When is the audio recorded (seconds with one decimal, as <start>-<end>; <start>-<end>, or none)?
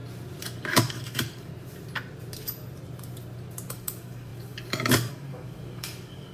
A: 0.0-0.7; 1.5-3.7